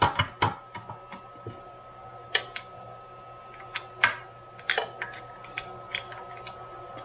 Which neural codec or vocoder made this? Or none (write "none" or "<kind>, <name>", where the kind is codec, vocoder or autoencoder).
none